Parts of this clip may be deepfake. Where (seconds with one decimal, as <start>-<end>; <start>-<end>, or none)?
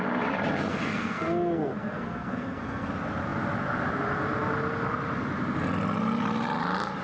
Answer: 0.7-2.9